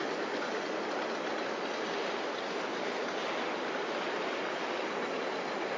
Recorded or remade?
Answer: recorded